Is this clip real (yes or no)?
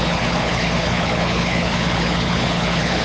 no